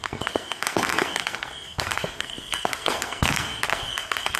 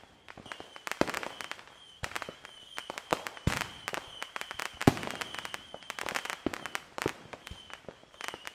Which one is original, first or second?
second